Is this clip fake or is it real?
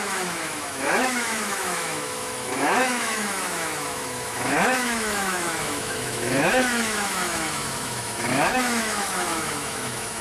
fake